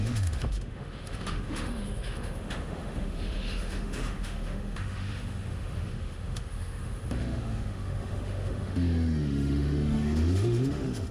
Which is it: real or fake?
fake